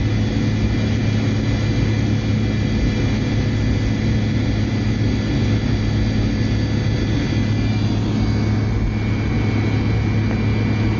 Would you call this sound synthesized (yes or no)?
no